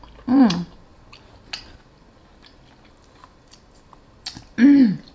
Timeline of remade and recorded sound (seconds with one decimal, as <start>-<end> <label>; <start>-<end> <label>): 0.0-5.1 recorded